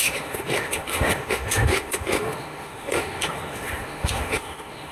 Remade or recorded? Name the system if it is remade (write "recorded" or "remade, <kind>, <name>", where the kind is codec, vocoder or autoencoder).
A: remade, autoencoder, DAC-VAE